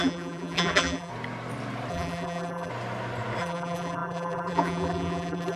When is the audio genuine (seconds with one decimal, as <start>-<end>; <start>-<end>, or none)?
1.1-1.9; 2.7-3.4